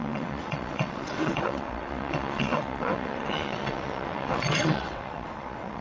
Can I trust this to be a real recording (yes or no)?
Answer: no